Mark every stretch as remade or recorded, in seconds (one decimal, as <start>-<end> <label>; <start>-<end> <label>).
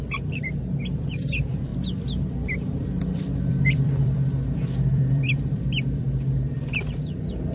0.0-7.5 remade